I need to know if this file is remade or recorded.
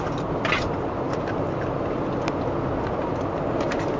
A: recorded